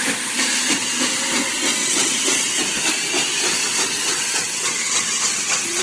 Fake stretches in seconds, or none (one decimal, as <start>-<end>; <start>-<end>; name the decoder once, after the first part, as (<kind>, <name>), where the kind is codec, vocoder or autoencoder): 1.8-2.6 (vocoder, WaveNeXt); 3.6-5.8